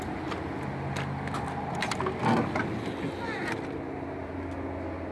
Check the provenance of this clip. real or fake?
real